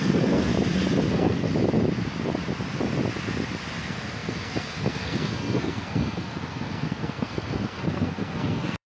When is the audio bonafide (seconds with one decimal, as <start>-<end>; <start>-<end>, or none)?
0.5-1.1; 1.5-3.8

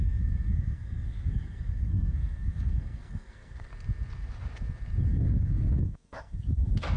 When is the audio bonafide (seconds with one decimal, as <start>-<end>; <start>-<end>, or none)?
3.7-5.1

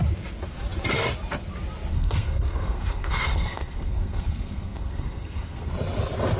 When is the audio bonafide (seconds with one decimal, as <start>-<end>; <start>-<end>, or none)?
0.0-1.9; 5.7-6.4

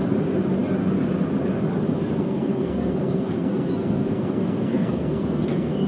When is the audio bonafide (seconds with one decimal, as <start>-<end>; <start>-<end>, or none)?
0.0-2.2

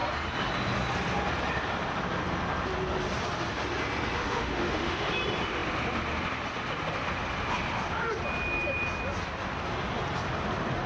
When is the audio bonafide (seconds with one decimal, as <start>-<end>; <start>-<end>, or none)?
0.0-4.2; 5.1-10.9

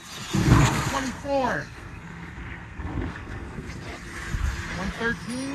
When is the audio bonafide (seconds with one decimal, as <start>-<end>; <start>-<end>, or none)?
0.0-0.4; 3.7-5.5

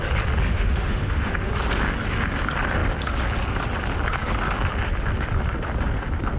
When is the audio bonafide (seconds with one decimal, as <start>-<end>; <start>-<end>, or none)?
0.0-0.5; 1.5-6.4

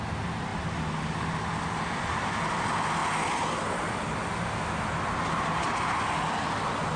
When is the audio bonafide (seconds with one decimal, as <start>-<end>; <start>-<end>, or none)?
0.0-7.0